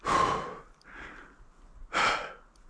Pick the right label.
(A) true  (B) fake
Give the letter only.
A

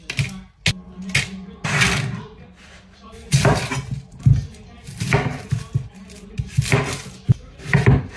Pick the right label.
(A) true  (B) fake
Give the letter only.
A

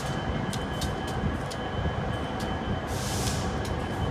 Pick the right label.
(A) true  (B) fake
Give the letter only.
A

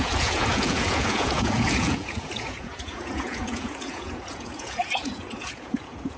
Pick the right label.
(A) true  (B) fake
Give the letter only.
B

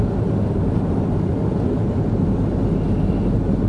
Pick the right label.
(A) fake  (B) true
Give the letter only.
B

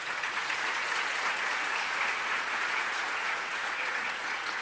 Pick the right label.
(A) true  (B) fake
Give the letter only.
B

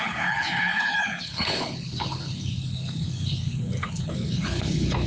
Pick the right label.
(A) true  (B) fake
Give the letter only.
B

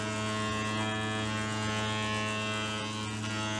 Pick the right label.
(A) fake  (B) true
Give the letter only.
B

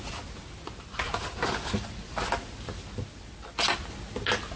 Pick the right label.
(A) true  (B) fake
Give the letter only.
A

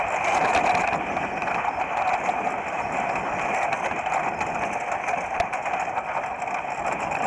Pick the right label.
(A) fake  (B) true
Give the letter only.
B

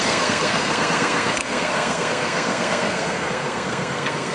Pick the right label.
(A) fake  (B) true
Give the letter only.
A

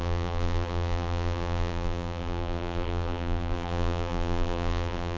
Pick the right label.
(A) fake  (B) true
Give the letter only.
A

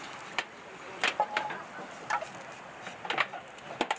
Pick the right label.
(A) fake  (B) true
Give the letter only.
B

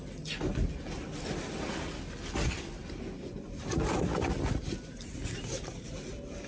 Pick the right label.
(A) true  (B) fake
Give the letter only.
A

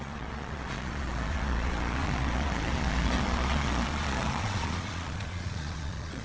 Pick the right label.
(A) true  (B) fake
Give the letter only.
B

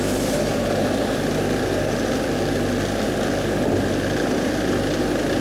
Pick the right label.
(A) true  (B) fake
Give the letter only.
A